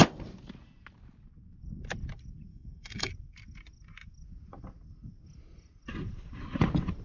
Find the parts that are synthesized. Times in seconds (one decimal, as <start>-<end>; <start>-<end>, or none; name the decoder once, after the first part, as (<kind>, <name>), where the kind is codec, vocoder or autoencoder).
2.5-3.1 (codec, SNAC)